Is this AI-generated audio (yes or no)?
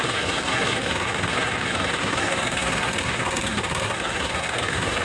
yes